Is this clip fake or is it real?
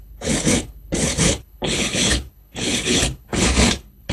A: fake